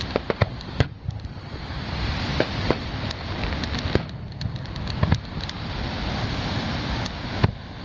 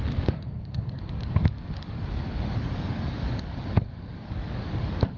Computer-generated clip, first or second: second